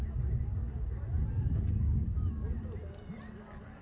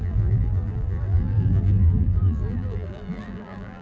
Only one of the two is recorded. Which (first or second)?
first